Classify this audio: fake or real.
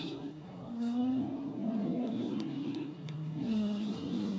fake